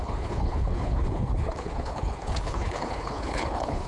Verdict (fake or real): fake